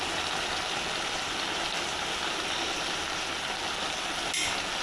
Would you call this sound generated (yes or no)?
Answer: no